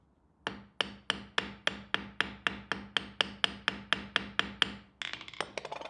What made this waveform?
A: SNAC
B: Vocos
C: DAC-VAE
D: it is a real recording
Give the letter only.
D